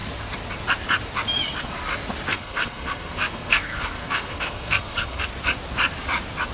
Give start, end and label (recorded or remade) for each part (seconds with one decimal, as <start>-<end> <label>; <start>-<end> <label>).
0.0-2.3 recorded; 2.3-5.3 remade; 5.3-6.5 recorded